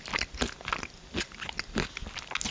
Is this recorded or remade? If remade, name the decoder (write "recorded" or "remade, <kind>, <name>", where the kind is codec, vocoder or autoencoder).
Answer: recorded